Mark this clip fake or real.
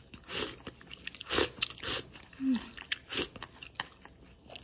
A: real